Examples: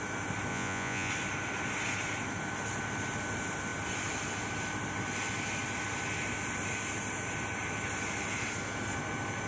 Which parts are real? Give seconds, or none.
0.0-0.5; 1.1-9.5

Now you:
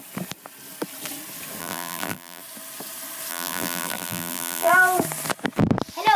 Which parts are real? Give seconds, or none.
0.0-1.6; 2.4-3.3; 4.7-6.2

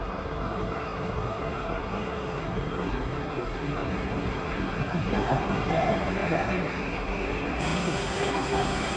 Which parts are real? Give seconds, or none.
none

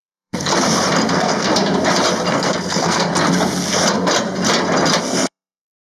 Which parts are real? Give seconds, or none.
0.5-1.1; 1.5-2.3; 3.1-5.0

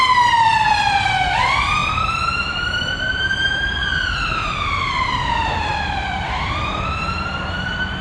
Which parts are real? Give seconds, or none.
5.7-6.3

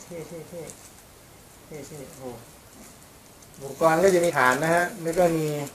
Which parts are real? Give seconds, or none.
0.0-3.7; 4.3-4.8